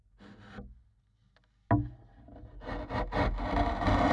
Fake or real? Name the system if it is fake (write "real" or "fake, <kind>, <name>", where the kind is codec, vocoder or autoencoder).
real